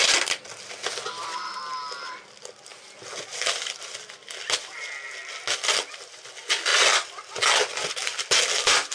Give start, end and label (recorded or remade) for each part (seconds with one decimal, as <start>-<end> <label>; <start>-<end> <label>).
0.0-8.9 recorded